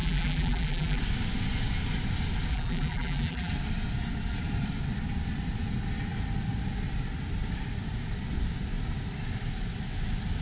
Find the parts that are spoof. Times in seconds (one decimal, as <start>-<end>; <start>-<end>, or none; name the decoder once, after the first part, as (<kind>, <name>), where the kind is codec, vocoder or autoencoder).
0.0-1.0 (vocoder, BigVGAN v2); 2.5-3.5